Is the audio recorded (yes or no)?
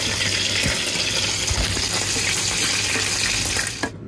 yes